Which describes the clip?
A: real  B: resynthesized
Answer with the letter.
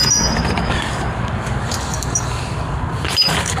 B